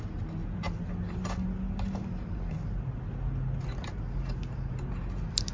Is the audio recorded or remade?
recorded